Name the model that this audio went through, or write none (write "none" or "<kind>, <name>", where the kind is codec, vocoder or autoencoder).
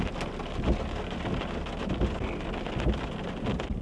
none